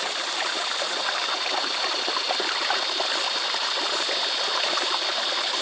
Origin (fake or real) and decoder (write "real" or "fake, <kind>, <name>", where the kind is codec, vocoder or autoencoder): real